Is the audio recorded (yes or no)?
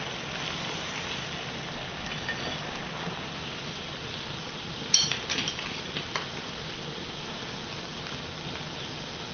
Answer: yes